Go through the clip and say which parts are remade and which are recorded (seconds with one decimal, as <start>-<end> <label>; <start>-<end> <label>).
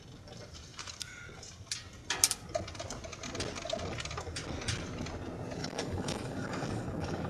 0.0-5.6 recorded; 5.6-7.3 remade